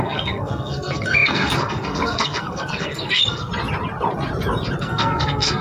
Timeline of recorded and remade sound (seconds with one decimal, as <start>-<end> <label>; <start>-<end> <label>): 0.0-3.5 remade; 3.5-4.8 recorded; 4.8-5.6 remade